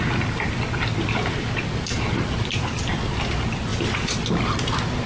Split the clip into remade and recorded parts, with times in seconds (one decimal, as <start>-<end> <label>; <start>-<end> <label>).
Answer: 0.0-5.1 recorded